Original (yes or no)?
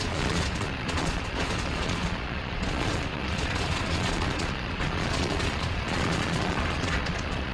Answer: no